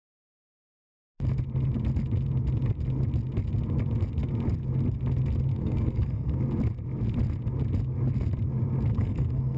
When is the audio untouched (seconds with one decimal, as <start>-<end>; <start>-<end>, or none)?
0.0-5.5; 6.4-8.9